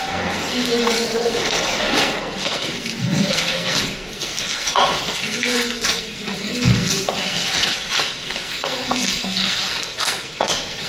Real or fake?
fake